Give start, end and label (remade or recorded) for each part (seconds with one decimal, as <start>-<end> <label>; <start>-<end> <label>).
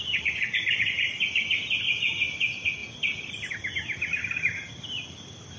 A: 0.0-5.6 recorded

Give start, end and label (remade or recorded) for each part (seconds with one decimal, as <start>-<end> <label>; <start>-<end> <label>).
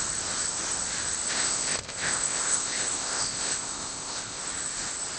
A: 0.0-1.3 recorded; 1.3-4.4 remade; 4.4-5.2 recorded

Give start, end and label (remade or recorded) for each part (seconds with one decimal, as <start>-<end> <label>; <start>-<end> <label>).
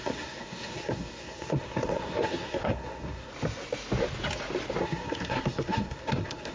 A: 0.0-3.3 remade; 3.3-4.8 recorded; 4.8-6.5 remade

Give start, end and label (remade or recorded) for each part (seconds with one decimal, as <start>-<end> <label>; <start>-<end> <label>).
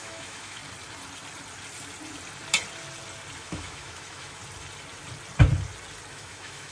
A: 0.0-0.6 remade; 0.6-3.4 recorded; 3.4-4.4 remade; 4.4-6.1 recorded; 6.1-6.7 remade